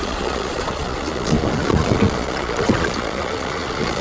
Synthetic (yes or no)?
yes